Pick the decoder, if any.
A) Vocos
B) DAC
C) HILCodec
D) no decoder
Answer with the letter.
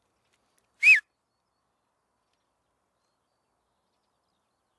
D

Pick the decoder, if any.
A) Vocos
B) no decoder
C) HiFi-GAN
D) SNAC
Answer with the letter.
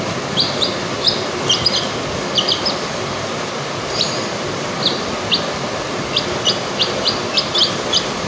B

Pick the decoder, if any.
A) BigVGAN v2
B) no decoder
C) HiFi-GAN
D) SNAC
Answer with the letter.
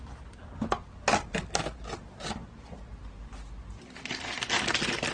B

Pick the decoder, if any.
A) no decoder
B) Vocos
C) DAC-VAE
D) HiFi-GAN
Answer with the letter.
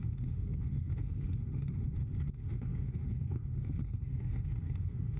C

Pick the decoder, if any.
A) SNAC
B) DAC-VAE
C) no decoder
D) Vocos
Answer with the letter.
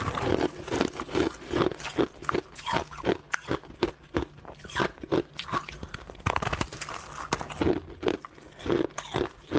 C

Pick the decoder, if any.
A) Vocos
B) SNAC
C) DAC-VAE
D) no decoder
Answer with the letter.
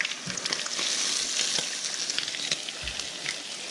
D